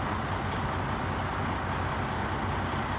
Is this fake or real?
real